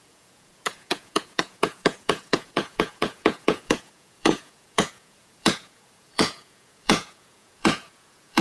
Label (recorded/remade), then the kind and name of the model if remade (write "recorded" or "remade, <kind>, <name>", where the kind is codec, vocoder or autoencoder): remade, vocoder, Vocos